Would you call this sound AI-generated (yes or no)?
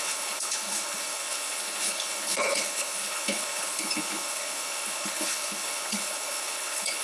yes